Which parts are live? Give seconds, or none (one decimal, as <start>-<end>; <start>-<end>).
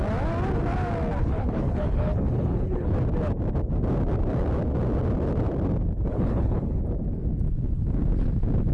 0.0-1.2; 2.9-6.1; 6.8-8.7